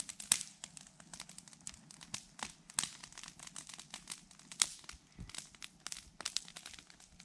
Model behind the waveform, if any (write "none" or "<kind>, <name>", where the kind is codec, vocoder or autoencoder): none